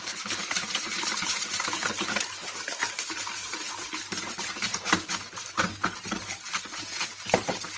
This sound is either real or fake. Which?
fake